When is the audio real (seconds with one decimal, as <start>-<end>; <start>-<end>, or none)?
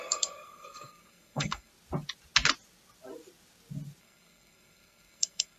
1.7-4.0